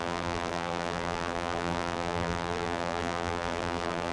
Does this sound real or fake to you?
fake